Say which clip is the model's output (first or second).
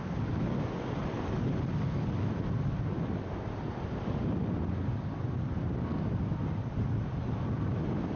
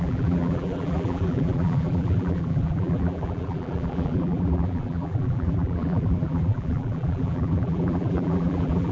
second